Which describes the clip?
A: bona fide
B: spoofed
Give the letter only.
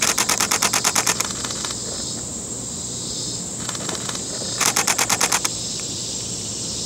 A